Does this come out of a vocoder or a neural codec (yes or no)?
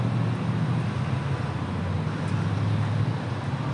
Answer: no